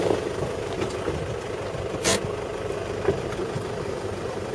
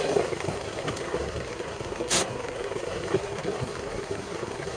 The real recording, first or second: first